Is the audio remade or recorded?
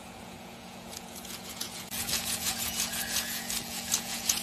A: remade